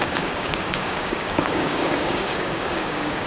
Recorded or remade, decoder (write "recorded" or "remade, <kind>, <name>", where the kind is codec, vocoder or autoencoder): remade, codec, DAC